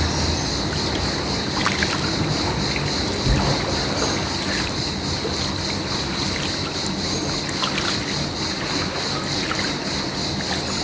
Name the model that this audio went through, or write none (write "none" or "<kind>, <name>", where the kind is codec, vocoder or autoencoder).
none